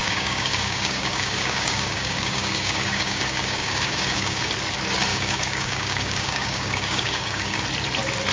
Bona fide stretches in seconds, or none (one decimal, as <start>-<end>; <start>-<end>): 4.5-5.1; 7.6-8.3